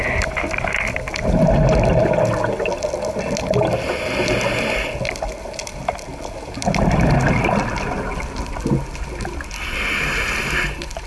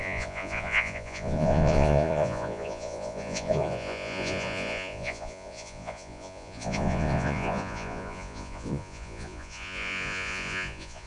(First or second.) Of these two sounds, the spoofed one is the second